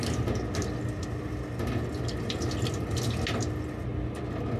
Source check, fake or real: real